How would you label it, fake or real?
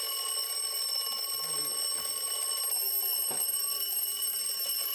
real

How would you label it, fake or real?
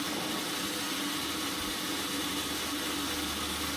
real